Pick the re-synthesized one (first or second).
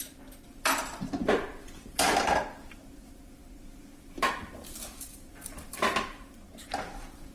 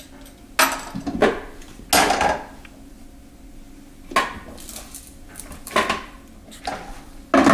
first